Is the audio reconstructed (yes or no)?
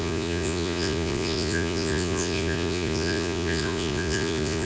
yes